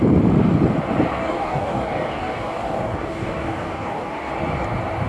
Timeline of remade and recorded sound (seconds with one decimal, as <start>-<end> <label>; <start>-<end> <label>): 0.0-1.2 recorded; 1.2-4.3 remade; 4.3-5.1 recorded

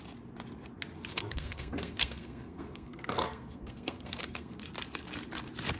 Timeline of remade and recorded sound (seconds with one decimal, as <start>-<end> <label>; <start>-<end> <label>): 0.0-1.1 recorded; 1.1-4.6 remade; 4.6-5.8 recorded

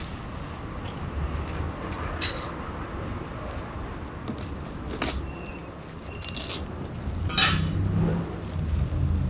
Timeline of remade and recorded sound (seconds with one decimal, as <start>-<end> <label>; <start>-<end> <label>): 0.0-9.3 recorded